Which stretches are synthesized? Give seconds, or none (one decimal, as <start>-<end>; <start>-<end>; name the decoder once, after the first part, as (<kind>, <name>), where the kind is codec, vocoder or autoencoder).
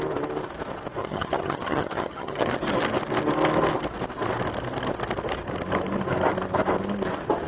1.0-2.5 (vocoder, HiFi-GAN)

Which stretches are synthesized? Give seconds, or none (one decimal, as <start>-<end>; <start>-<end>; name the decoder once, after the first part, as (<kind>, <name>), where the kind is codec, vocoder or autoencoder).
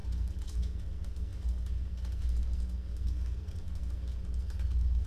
0.0-5.1 (codec, SNAC)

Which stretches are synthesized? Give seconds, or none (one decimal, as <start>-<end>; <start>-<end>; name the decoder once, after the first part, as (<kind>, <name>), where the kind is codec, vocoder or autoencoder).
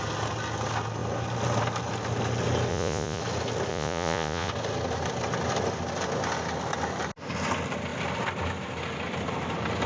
2.7-3.2 (vocoder, Vocos); 3.7-4.5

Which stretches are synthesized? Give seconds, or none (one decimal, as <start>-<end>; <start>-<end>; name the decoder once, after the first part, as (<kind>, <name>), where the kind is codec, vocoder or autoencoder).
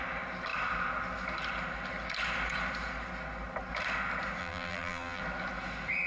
4.4-5.2 (vocoder, BigVGAN v2)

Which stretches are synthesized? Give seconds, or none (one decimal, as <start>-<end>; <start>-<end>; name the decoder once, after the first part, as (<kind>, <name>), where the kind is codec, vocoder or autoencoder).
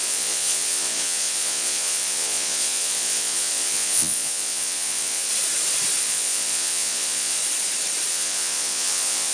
0.0-5.3 (vocoder, Vocos); 6.0-7.4; 8.1-9.3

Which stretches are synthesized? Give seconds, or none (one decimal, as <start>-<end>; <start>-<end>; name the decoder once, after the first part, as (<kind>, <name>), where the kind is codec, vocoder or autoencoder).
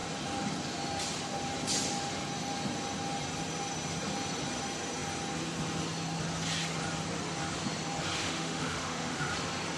8.2-9.3 (autoencoder, DAC-VAE)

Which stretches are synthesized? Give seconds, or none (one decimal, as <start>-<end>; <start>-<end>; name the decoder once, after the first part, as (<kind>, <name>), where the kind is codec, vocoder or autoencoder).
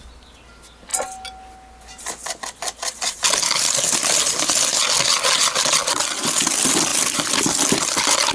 none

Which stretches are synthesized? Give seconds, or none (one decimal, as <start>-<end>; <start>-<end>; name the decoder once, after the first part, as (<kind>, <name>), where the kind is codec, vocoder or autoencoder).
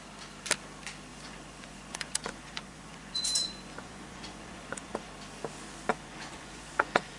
1.1-5.1 (vocoder, Vocos); 5.9-7.2